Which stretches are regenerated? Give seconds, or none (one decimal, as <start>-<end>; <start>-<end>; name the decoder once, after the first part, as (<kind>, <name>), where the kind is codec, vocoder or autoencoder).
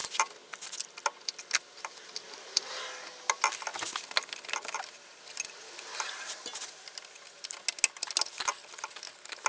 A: none